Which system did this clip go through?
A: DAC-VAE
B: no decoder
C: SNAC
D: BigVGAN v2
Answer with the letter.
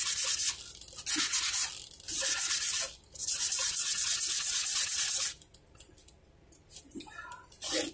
B